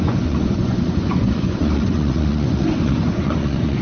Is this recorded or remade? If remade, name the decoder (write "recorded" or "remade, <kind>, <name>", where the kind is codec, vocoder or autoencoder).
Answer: remade, vocoder, Vocos